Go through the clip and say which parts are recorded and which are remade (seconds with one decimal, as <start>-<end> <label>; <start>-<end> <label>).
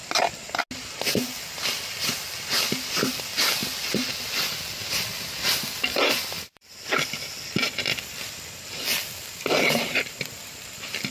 0.0-3.1 recorded; 3.1-3.6 remade; 3.6-6.4 recorded; 6.4-11.1 remade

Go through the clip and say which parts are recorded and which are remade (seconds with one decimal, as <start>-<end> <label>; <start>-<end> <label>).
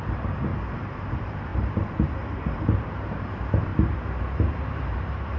0.0-0.5 remade; 0.5-1.1 recorded; 1.1-3.7 remade; 3.7-4.7 recorded; 4.7-5.4 remade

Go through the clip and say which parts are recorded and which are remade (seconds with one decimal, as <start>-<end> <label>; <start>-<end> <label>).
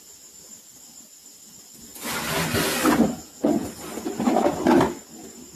0.0-5.6 recorded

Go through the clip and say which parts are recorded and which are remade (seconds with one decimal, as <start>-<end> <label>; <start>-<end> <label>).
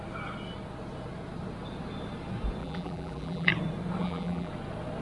0.0-2.6 recorded; 2.6-3.5 remade; 3.5-4.0 recorded; 4.0-4.5 remade; 4.5-5.0 recorded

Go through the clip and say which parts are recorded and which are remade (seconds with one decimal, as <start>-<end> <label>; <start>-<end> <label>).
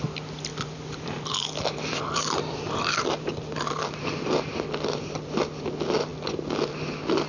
0.0-0.5 recorded; 0.5-4.5 remade; 4.5-7.3 recorded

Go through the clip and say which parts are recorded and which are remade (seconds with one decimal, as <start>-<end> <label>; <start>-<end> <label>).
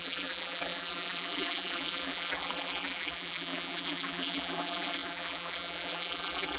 0.0-6.6 remade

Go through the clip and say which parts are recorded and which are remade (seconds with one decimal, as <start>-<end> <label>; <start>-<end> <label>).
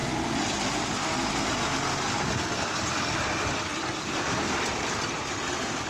0.0-3.7 recorded; 3.7-4.8 remade; 4.8-5.9 recorded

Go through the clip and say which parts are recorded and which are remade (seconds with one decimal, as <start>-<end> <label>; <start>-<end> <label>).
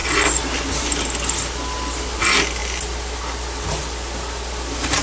0.0-5.0 recorded